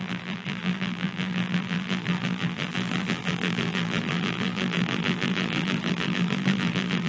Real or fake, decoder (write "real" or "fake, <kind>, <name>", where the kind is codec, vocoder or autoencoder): fake, vocoder, BigVGAN v2